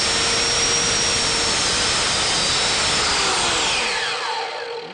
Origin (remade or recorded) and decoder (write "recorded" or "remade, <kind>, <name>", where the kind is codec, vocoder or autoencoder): remade, vocoder, BigVGAN v2